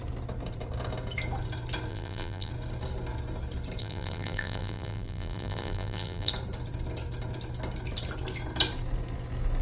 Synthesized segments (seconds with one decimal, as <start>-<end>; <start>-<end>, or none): 1.9-2.5; 3.8-6.3